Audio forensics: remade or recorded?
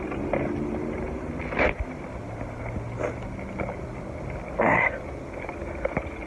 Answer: recorded